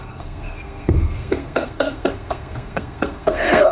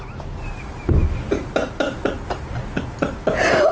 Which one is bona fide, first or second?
second